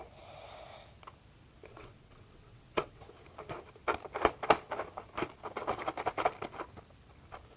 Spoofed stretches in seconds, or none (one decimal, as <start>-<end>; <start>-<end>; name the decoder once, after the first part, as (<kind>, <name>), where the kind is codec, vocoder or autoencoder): 1.7-3.1 (vocoder, WaveNeXt)